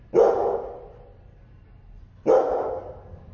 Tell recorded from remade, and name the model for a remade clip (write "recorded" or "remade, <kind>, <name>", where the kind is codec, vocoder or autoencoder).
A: recorded